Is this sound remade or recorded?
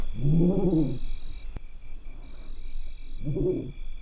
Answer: recorded